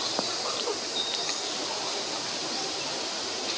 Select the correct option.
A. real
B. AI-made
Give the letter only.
A